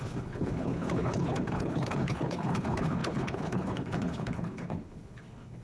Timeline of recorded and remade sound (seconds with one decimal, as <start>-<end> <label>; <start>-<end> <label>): 0.0-5.6 remade